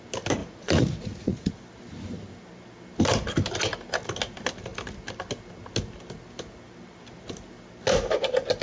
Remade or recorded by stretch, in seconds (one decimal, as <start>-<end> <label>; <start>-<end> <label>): 0.0-0.4 recorded; 0.4-1.5 remade; 1.5-8.6 recorded